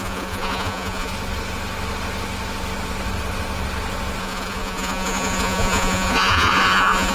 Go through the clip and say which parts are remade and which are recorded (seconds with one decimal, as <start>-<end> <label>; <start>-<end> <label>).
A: 0.0-1.1 remade; 1.1-4.2 recorded; 4.2-7.1 remade